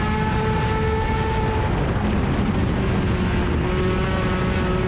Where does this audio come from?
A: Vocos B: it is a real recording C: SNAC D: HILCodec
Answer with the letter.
B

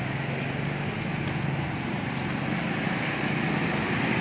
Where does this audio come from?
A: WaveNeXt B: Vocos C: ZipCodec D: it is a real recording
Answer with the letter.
D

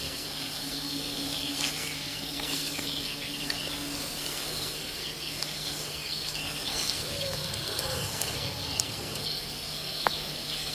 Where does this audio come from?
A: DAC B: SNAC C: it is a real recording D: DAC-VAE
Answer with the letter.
B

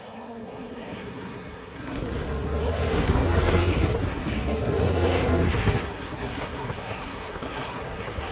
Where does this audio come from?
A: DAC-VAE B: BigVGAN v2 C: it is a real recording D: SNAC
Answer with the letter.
D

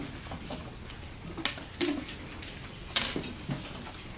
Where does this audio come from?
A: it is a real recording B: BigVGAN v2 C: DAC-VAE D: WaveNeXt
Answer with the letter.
A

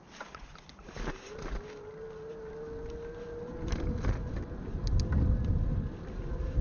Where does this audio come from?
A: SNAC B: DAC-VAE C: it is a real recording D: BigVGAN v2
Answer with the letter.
C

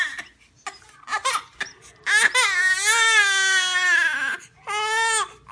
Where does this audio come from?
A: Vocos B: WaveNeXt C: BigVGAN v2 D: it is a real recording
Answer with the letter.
D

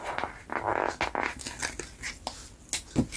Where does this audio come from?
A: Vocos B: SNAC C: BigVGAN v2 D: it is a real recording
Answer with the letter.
D